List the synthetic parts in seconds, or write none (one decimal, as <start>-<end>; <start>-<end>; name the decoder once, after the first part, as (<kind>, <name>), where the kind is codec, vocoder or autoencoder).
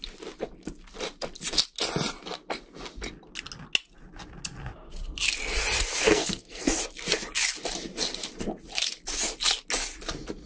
6.0-6.8 (codec, SNAC)